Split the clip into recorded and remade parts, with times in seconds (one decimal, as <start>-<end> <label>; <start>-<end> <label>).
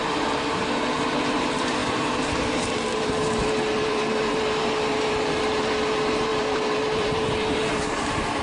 0.0-8.4 remade